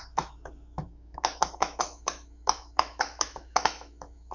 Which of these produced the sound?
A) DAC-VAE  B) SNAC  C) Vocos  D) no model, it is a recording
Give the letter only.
A